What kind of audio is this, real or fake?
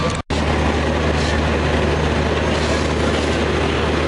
real